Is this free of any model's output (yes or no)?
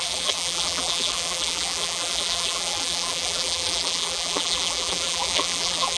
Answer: no